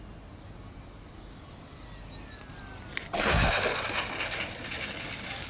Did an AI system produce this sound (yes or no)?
no